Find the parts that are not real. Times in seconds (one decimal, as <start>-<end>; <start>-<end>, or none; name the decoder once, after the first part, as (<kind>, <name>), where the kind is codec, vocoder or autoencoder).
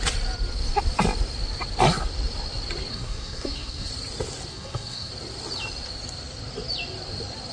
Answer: 2.9-3.9 (codec, SNAC); 4.5-5.1